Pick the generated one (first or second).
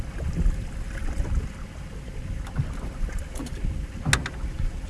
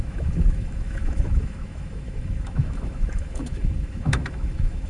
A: second